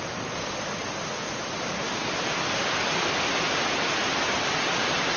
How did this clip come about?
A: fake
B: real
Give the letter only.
B